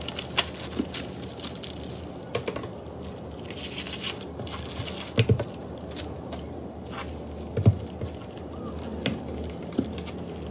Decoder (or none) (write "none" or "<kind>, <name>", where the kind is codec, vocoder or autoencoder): none